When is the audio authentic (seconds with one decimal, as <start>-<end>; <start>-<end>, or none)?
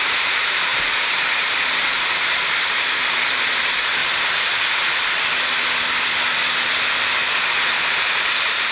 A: 4.0-7.7